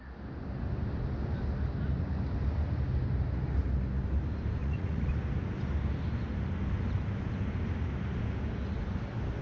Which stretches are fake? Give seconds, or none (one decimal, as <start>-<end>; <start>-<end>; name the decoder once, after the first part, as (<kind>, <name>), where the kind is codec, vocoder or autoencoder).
4.6-5.1 (vocoder, Vocos)